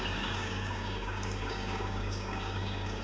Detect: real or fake fake